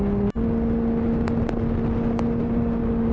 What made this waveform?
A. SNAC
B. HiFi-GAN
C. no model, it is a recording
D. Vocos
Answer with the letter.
C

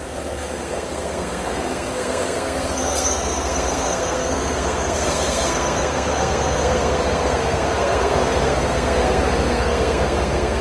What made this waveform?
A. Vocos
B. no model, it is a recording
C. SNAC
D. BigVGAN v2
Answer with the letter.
C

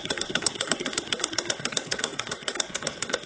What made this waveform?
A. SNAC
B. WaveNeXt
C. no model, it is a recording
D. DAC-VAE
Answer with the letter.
A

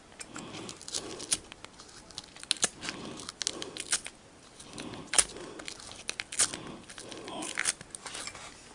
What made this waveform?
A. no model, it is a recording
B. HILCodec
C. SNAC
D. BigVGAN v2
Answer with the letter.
A